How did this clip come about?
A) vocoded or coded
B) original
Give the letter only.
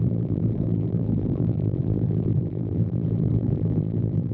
A